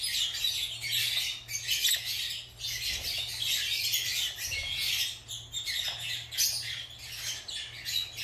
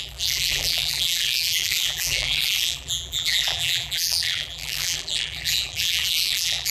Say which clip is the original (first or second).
first